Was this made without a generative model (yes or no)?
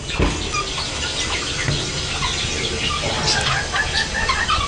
yes